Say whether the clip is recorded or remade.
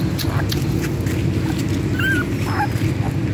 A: recorded